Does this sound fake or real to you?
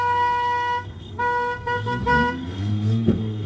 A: fake